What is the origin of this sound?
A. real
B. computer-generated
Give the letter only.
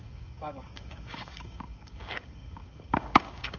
B